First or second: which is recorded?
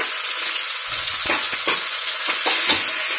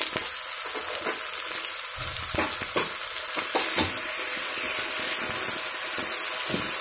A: second